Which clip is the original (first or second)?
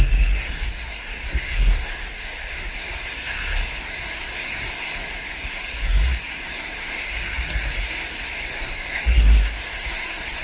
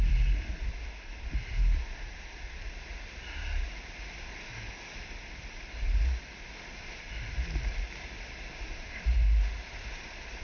second